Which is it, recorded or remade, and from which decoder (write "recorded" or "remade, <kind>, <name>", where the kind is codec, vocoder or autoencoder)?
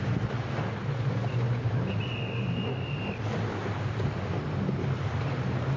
recorded